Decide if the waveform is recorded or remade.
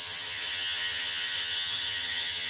remade